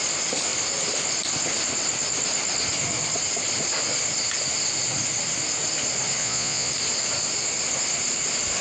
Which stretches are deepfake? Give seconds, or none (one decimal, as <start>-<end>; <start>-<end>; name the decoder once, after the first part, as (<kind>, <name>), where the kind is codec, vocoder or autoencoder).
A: 6.2-6.7 (vocoder, Vocos)